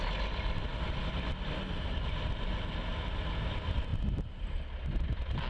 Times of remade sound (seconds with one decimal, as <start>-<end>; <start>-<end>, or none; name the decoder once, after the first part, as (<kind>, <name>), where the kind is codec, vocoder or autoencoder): none